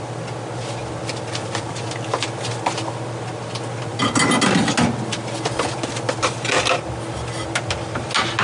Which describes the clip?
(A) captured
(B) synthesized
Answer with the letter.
A